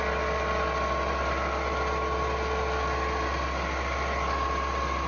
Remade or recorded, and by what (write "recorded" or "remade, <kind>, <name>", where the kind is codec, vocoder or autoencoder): recorded